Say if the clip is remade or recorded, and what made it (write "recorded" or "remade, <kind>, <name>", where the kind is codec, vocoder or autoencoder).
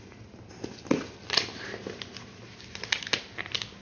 recorded